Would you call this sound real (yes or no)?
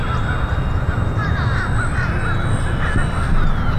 yes